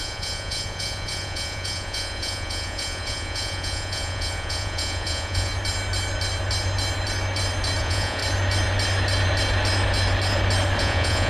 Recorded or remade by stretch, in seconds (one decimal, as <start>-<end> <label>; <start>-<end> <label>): 0.0-5.5 remade; 5.5-7.8 recorded; 7.8-8.2 remade; 8.2-10.8 recorded; 10.8-11.3 remade